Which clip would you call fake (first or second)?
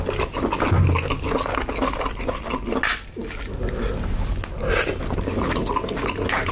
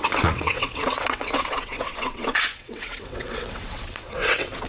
second